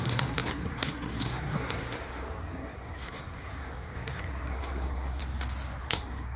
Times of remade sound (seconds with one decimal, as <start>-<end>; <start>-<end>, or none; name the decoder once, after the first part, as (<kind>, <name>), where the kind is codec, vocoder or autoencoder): 0.0-5.2 (codec, SNAC); 5.8-6.4